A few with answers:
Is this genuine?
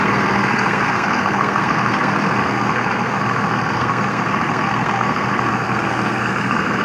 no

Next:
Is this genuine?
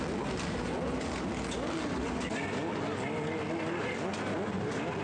yes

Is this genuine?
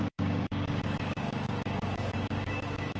no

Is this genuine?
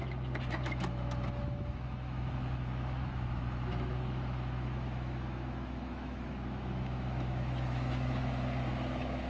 no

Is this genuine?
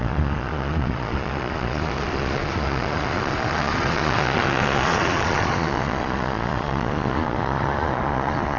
no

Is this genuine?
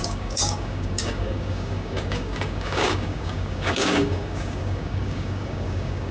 no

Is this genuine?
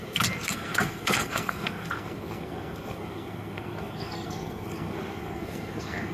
no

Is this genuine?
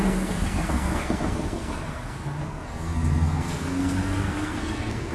no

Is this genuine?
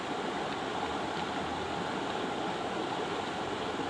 yes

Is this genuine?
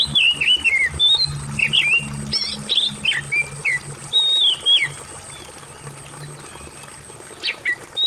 yes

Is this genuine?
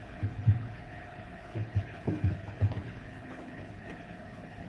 no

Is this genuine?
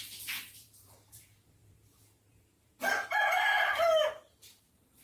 no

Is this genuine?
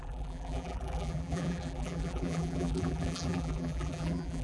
no